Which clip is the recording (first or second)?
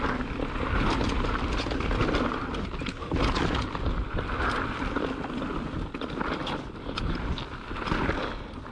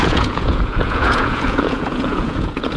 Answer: first